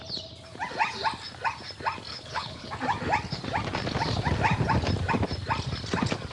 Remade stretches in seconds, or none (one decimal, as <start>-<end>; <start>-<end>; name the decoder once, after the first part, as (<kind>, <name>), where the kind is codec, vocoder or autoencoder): 2.1-2.7 (codec, HILCodec)